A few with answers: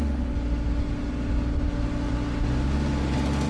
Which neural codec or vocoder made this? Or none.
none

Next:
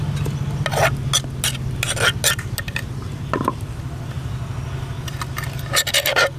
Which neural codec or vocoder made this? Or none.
none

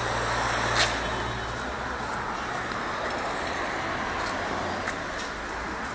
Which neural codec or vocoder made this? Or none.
none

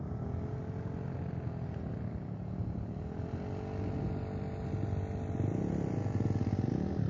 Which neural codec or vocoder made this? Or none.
none